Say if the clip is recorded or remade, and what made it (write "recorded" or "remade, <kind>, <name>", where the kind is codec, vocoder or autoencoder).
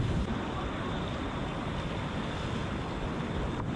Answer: recorded